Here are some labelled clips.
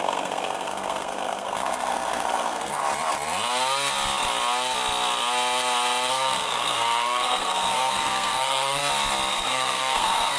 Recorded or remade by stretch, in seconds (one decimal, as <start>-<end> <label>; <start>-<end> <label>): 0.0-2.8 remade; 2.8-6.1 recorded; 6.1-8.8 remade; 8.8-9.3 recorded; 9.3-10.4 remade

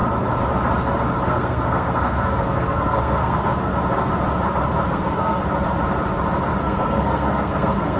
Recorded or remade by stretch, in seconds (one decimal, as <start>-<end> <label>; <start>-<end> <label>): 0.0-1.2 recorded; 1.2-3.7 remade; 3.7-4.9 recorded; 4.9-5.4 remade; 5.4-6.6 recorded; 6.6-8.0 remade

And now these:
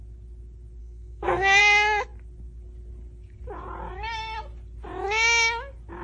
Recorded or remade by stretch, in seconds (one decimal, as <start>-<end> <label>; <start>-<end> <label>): 0.0-0.8 recorded; 0.8-1.6 remade; 1.6-6.0 recorded

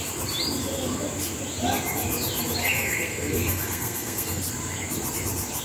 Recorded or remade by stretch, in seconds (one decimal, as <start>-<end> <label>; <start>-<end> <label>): 0.0-2.6 recorded; 2.6-4.4 remade; 4.4-5.6 recorded

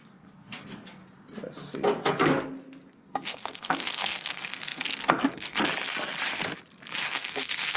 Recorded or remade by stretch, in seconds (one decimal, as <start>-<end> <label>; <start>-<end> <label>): 0.0-1.0 remade; 1.0-2.9 recorded; 2.9-5.7 remade; 5.7-7.0 recorded; 7.0-7.8 remade

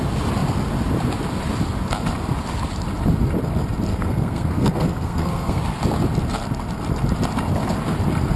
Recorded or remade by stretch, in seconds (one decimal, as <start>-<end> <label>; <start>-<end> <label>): 0.0-3.9 recorded; 3.9-5.6 remade; 5.6-8.4 recorded

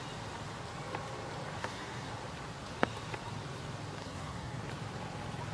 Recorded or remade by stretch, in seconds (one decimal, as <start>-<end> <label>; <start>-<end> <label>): 0.0-1.6 recorded; 1.6-2.1 remade; 2.1-4.0 recorded; 4.0-4.6 remade; 4.6-5.5 recorded